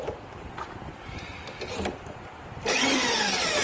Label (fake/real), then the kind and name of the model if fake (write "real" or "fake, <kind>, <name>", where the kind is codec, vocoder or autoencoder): fake, vocoder, BigVGAN v2